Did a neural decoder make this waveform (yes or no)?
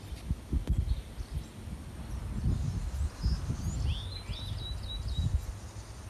no